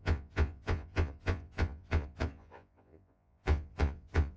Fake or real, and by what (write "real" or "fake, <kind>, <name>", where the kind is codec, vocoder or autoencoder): fake, vocoder, Vocos